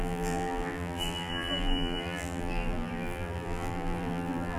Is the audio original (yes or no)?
no